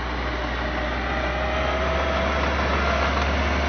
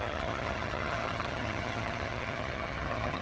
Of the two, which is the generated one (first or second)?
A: second